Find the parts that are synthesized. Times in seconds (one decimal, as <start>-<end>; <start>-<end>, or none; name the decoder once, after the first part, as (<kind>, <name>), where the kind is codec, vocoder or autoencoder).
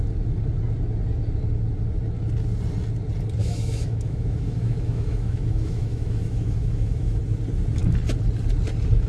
3.4-7.2 (autoencoder, DAC-VAE)